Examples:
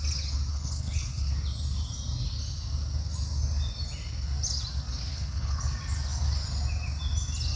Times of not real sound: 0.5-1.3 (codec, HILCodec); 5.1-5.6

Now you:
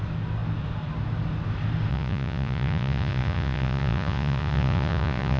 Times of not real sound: 1.9-5.4 (vocoder, Vocos)

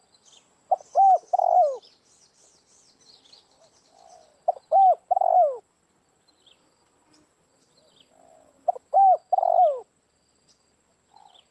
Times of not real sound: none

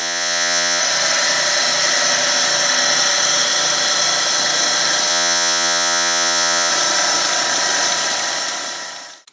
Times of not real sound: 0.0-0.8 (vocoder, Vocos); 5.1-6.7

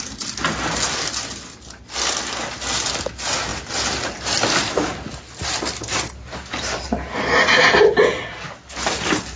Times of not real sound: none

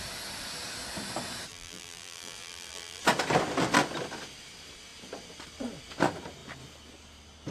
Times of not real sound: 1.5-3.0 (vocoder, BigVGAN v2)

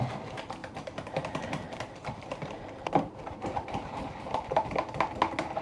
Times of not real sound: 0.6-4.0 (vocoder, BigVGAN v2)